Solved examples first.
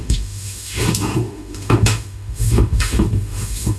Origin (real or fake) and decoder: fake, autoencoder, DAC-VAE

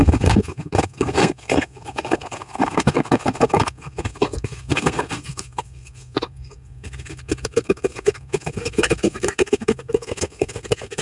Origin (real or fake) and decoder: fake, codec, SNAC